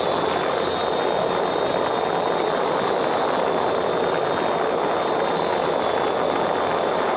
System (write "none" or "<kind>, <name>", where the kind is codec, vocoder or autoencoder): none